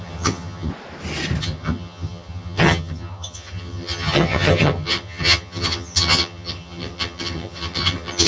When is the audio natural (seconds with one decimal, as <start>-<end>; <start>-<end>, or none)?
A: 0.7-1.4